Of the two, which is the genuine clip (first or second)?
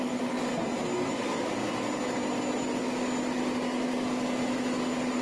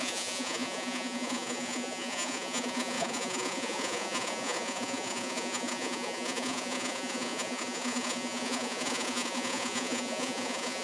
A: first